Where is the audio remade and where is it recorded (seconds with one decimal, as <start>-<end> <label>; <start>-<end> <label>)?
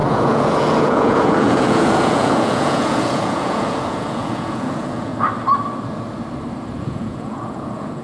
0.0-5.1 remade; 5.1-6.8 recorded; 6.8-8.0 remade